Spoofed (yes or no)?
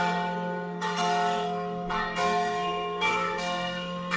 yes